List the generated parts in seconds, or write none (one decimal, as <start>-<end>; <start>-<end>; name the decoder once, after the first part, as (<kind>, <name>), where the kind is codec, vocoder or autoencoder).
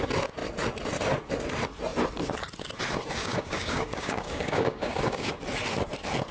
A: 3.2-5.3 (codec, DAC)